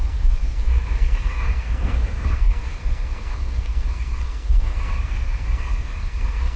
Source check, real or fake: fake